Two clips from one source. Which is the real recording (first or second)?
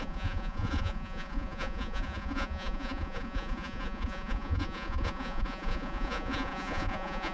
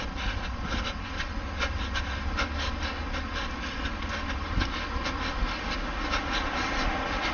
second